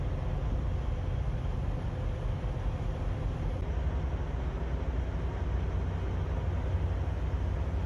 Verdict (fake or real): real